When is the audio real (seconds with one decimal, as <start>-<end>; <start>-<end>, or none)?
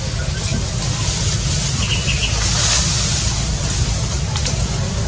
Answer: 0.0-5.1